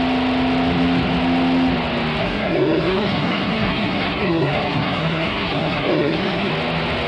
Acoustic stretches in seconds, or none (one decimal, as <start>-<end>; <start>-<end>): 0.0-2.2; 6.5-7.1